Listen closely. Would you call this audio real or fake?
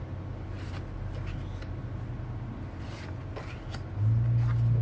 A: real